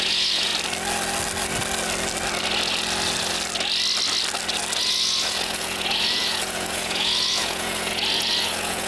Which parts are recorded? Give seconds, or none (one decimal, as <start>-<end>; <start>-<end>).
0.5-4.8